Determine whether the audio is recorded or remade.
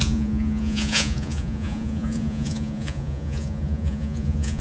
remade